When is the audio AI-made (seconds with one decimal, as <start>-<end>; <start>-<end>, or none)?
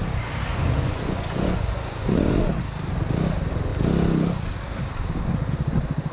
0.5-2.4